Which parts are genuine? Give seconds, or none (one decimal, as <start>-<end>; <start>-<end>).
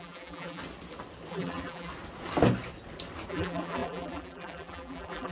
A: 0.6-1.3; 1.9-3.3